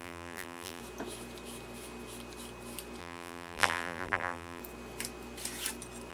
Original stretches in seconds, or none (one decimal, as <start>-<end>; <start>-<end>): 0.8-3.0; 4.6-6.1